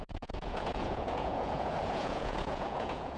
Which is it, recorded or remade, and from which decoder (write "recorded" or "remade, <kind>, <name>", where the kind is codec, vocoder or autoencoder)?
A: remade, vocoder, Vocos